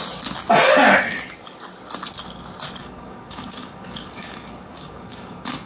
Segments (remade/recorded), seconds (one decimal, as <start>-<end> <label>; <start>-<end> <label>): 0.0-2.8 recorded; 2.8-5.7 remade